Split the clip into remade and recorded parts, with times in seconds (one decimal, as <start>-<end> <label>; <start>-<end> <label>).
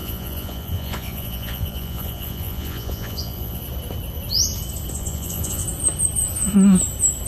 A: 0.0-3.6 remade; 3.6-4.9 recorded; 4.9-5.6 remade; 5.6-7.3 recorded